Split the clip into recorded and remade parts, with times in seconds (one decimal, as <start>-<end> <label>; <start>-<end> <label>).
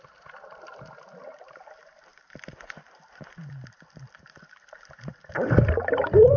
0.0-6.4 remade